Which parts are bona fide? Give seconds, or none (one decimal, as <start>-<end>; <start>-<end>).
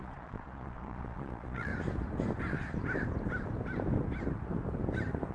1.7-5.3